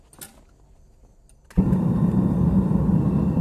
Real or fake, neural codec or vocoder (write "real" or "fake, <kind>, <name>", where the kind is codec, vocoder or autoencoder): real